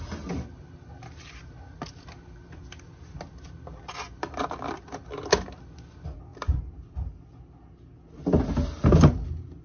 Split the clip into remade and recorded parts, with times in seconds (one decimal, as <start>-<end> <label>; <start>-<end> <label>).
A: 0.0-9.6 recorded